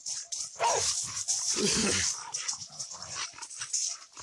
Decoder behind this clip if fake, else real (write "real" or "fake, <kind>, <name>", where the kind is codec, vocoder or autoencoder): real